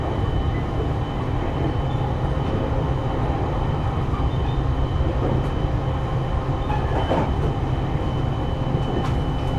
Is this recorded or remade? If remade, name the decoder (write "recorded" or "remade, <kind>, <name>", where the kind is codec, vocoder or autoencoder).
recorded